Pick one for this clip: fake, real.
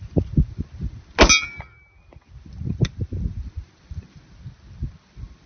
real